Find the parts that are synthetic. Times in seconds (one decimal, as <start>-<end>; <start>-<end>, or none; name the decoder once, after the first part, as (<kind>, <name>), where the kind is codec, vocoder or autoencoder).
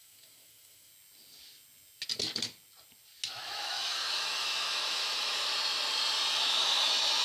0.0-0.9 (autoencoder, DAC-VAE); 3.3-5.5; 6.4-7.2